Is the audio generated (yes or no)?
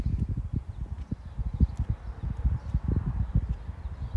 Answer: no